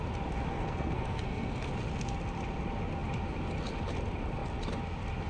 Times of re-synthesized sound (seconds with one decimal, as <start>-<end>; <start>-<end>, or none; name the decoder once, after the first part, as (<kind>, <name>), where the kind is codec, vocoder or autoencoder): 0.5-1.7 (codec, SNAC)